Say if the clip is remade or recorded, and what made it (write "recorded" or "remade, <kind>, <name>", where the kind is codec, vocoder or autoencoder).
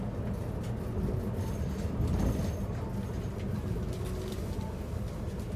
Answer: recorded